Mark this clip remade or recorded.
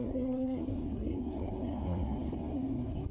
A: remade